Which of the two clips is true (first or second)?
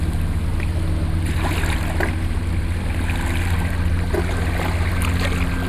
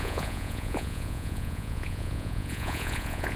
first